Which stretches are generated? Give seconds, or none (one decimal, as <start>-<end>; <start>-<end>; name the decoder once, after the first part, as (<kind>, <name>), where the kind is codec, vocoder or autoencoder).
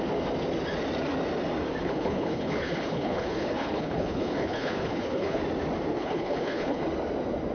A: 1.8-5.4 (codec, HILCodec); 5.9-6.8